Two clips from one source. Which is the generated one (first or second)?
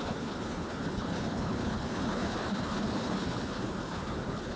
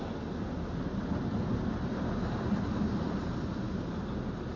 first